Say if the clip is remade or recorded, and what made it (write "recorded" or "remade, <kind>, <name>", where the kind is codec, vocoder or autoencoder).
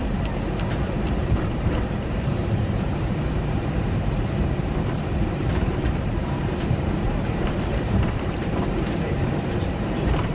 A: remade, vocoder, BigVGAN v2